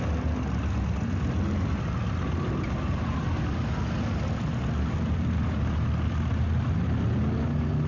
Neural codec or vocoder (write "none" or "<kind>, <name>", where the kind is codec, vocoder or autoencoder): none